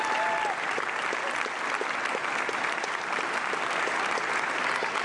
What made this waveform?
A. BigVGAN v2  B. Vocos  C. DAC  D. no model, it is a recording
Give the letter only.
D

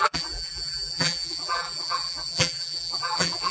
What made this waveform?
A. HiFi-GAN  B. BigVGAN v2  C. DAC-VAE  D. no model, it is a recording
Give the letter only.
B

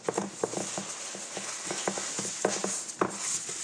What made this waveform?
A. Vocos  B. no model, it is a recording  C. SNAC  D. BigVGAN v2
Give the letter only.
B